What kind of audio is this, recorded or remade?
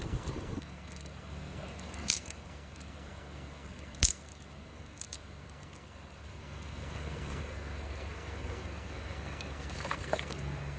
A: remade